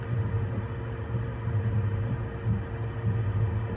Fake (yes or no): no